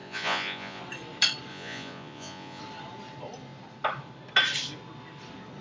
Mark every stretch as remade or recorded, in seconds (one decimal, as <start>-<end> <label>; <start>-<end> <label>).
0.0-0.8 remade; 0.8-1.5 recorded; 1.5-2.6 remade; 2.6-5.6 recorded